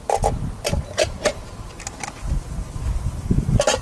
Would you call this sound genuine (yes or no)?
yes